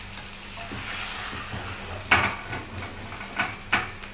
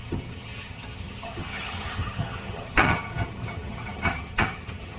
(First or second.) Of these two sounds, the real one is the first